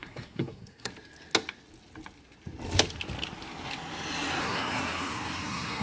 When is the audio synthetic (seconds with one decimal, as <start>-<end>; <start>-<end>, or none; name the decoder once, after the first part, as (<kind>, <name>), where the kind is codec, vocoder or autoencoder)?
0.0-0.9 (codec, SNAC); 4.4-5.8